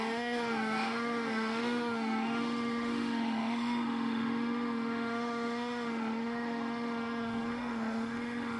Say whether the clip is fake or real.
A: fake